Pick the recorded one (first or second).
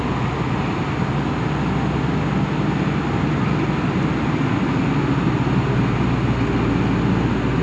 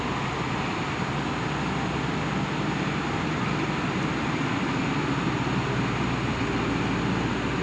first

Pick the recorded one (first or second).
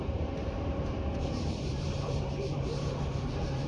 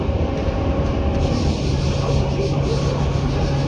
second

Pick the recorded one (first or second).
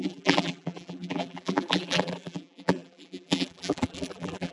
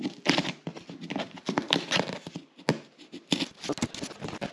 second